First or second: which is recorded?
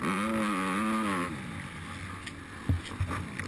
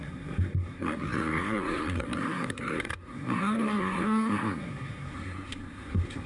first